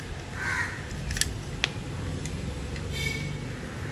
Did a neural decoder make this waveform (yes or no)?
no